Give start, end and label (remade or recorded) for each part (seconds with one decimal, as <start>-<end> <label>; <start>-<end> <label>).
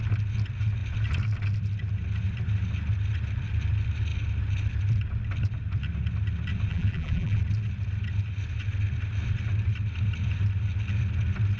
0.0-6.7 recorded; 6.7-7.4 remade; 7.4-11.6 recorded